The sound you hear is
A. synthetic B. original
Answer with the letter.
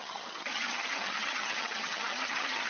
A